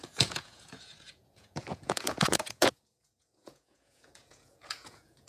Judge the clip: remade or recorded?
remade